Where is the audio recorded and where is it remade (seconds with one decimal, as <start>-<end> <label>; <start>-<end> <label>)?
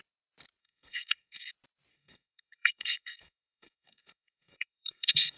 0.0-0.6 recorded; 0.6-1.5 remade; 1.5-1.9 recorded; 1.9-5.4 remade